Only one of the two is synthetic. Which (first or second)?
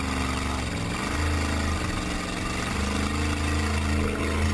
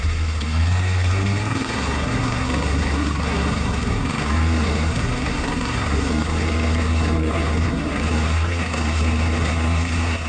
second